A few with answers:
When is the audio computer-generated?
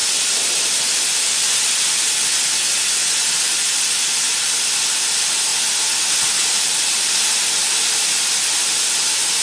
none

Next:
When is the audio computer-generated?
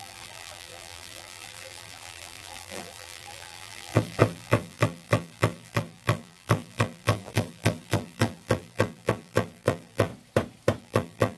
0.0-10.1 (vocoder, BigVGAN v2); 10.8-11.4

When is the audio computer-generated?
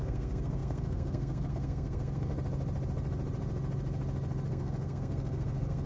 0.0-2.3 (codec, SNAC); 4.5-5.9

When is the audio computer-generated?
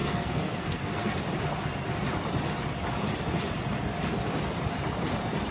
0.0-1.2 (codec, SNAC)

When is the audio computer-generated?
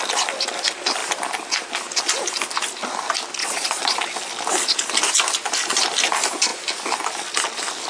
3.4-4.0 (vocoder, Vocos)